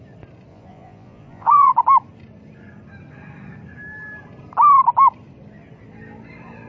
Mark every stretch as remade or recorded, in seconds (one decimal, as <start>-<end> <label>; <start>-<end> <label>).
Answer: 0.0-0.5 recorded; 0.5-1.7 remade; 1.7-6.7 recorded